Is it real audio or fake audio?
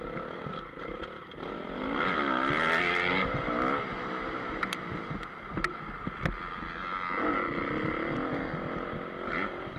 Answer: real